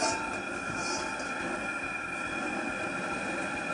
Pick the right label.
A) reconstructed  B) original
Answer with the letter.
B